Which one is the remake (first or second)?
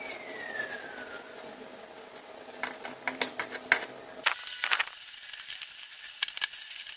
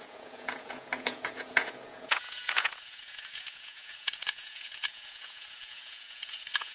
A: second